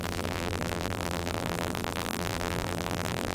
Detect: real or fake fake